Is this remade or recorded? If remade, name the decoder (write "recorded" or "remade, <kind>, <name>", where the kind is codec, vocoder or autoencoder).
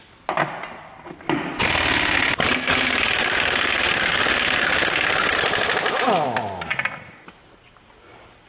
recorded